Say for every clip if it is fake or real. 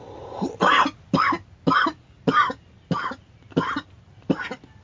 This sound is real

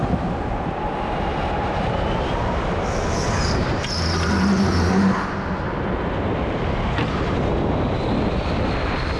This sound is real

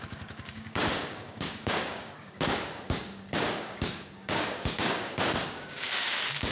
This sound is fake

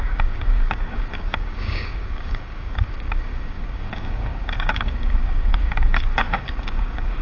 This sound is fake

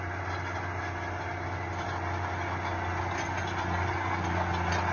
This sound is real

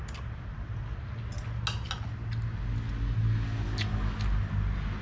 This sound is real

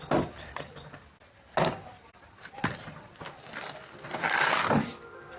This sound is real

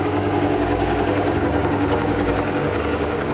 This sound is fake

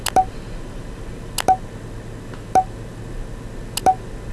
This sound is real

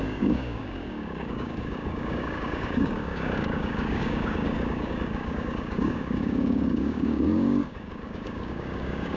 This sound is fake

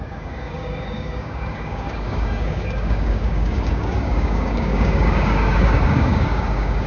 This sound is fake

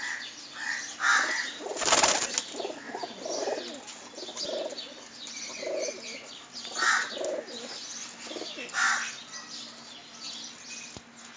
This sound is real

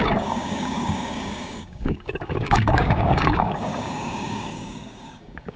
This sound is fake